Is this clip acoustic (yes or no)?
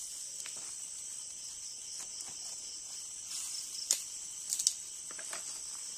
yes